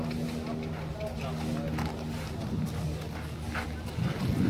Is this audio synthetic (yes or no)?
no